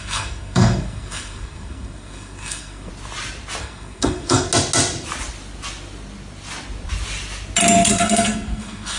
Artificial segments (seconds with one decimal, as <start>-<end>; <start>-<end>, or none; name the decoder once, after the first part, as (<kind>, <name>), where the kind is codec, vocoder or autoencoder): 0.0-2.9 (codec, SNAC); 3.6-4.5; 7.9-9.0